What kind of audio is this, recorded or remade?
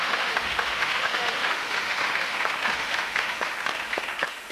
remade